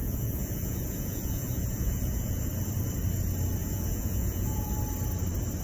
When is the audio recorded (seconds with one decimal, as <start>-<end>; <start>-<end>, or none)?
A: 2.4-3.6; 4.7-5.6